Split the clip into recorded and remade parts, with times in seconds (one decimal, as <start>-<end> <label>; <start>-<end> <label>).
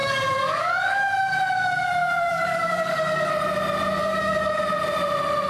0.0-3.3 remade; 3.3-4.0 recorded; 4.0-4.6 remade; 4.6-5.5 recorded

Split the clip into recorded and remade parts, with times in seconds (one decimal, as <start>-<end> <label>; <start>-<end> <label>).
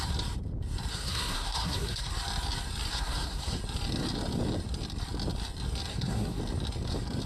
0.0-0.9 recorded; 0.9-2.1 remade; 2.1-2.9 recorded; 2.9-3.6 remade; 3.6-5.9 recorded; 5.9-6.4 remade; 6.4-7.3 recorded